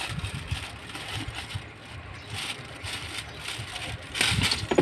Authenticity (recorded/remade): recorded